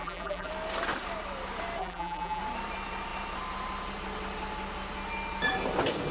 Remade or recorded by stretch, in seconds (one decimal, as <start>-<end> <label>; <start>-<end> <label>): 0.0-0.5 remade; 0.5-1.8 recorded; 1.8-2.4 remade; 2.4-6.1 recorded

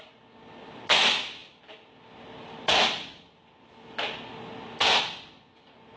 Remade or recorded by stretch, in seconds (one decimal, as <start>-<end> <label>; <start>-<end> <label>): 0.0-1.4 recorded; 1.4-5.0 remade; 5.0-6.0 recorded

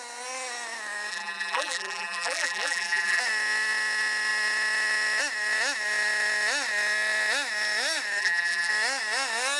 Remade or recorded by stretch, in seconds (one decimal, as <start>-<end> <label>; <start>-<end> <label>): 0.0-1.1 recorded; 1.1-3.2 remade; 3.2-8.2 recorded; 8.2-8.7 remade; 8.7-9.6 recorded

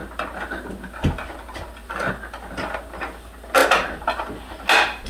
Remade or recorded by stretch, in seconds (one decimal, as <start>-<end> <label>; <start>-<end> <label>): 0.0-5.1 recorded

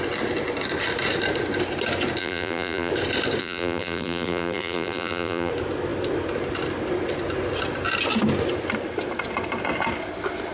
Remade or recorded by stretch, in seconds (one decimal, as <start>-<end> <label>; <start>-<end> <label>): 0.0-2.2 recorded; 2.2-2.9 remade; 2.9-3.4 recorded; 3.4-5.5 remade; 5.5-10.5 recorded

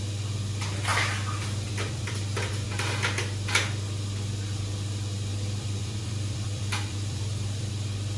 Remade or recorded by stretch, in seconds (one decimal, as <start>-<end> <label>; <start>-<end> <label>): 0.0-0.9 recorded; 0.9-2.7 remade; 2.7-5.3 recorded; 5.3-7.7 remade; 7.7-8.2 recorded

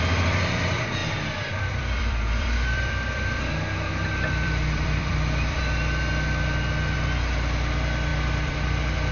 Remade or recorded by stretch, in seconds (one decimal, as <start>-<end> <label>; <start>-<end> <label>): 0.0-1.0 recorded; 1.0-5.6 remade; 5.6-8.1 recorded; 8.1-9.1 remade

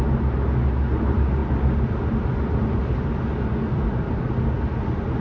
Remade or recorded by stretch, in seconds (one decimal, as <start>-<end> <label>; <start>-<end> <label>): 0.0-1.4 recorded; 1.4-4.2 remade; 4.2-5.2 recorded